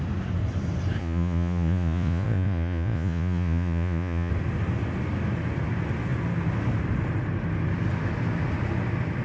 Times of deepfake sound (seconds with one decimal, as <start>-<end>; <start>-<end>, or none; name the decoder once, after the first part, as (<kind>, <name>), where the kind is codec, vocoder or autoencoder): 1.0-4.3 (vocoder, Vocos)